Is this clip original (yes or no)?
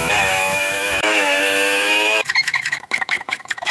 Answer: no